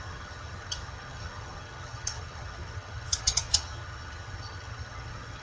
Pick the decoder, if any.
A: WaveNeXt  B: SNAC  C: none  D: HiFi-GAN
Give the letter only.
D